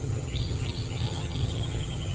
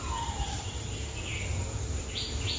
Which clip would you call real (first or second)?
second